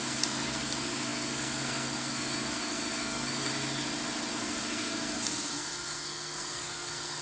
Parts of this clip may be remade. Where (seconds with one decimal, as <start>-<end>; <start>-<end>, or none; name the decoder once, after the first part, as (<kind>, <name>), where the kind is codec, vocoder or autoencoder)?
0.0-3.5 (codec, SNAC); 4.3-7.2